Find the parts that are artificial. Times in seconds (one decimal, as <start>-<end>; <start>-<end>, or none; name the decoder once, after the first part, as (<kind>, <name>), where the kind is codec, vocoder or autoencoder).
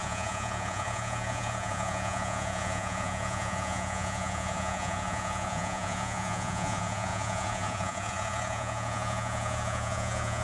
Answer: 0.0-10.4 (vocoder, Vocos)